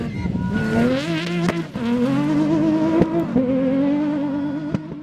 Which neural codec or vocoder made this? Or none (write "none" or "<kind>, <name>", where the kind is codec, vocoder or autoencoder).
none